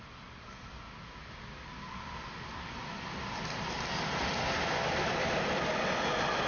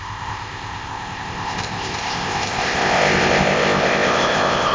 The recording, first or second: first